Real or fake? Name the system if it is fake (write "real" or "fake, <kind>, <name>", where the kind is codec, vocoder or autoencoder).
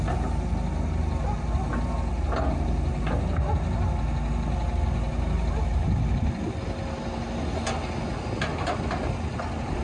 real